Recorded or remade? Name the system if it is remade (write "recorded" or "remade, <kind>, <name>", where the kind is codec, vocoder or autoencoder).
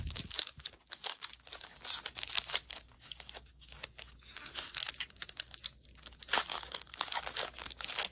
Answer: remade, codec, DAC